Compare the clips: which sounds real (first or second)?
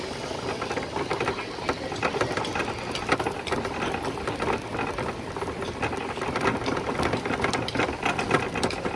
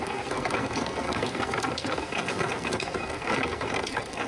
first